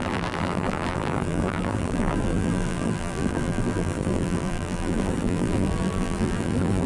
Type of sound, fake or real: fake